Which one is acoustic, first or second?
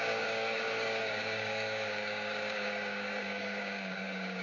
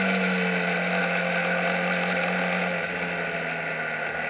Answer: second